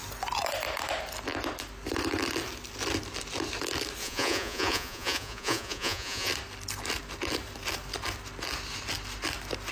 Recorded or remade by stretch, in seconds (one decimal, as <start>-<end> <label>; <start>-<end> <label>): 0.0-4.0 recorded; 4.0-6.3 remade; 6.3-9.7 recorded